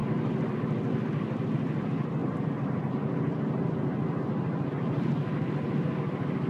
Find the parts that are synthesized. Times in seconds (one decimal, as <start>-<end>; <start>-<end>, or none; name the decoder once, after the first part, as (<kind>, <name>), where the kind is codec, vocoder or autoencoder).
0.0-0.6 (vocoder, BigVGAN v2); 2.2-2.9